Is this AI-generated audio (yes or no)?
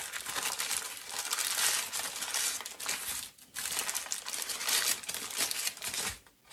no